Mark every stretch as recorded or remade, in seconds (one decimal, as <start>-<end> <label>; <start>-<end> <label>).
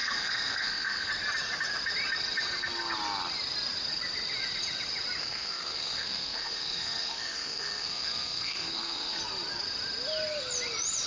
0.0-1.1 remade; 1.1-5.2 recorded; 5.2-9.2 remade; 9.2-11.1 recorded